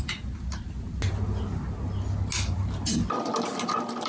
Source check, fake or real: real